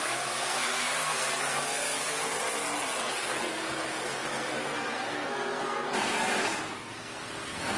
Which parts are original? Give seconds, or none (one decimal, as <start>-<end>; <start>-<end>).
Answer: 2.2-3.1